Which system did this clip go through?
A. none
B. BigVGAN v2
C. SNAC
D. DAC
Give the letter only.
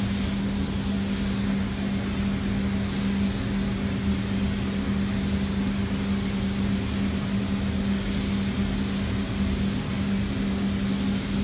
A